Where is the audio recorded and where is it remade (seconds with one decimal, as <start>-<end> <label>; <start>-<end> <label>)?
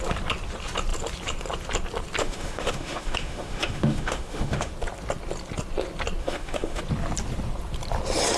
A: 0.0-2.2 recorded; 2.2-4.7 remade; 4.7-6.2 recorded; 6.2-6.8 remade; 6.8-8.4 recorded